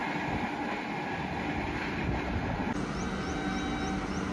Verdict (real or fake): real